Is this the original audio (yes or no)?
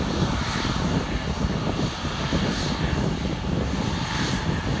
yes